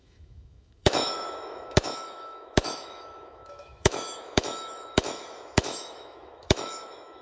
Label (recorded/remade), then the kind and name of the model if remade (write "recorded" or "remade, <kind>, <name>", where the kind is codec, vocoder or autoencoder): remade, autoencoder, DAC-VAE